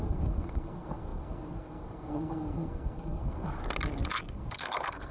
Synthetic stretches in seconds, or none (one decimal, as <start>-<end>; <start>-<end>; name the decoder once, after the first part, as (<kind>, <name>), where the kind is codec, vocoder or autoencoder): 0.0-3.6 (codec, SNAC); 4.3-5.1